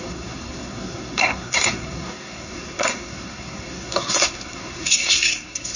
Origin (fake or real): fake